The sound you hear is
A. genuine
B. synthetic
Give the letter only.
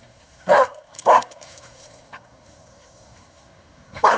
B